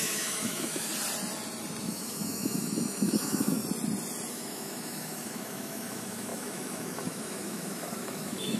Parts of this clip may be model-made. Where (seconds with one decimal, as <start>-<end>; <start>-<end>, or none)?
0.0-0.9; 1.8-3.6; 4.3-8.6